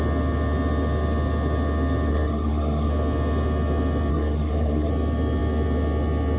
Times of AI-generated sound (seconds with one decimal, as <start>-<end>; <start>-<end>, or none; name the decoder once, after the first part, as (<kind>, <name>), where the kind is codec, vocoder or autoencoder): 2.1-2.9 (codec, SNAC); 4.1-4.9